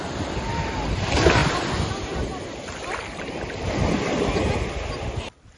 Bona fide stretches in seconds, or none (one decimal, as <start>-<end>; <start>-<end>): 0.0-5.6